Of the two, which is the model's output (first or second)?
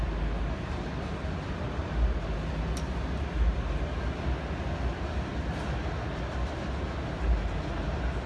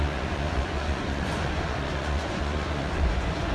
second